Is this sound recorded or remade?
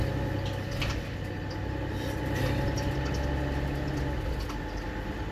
recorded